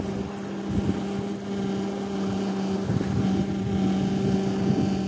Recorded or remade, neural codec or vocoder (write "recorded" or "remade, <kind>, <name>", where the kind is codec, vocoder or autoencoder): recorded